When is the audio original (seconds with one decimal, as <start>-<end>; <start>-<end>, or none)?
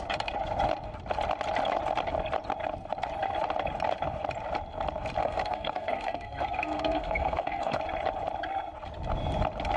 0.0-5.2; 7.8-9.8